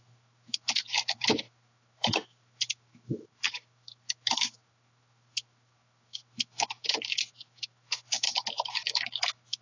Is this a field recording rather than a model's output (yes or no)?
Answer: no